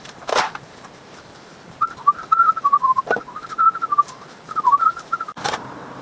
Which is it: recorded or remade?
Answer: remade